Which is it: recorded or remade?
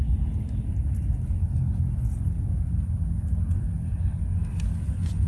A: recorded